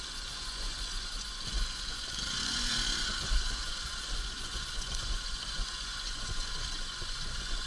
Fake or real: fake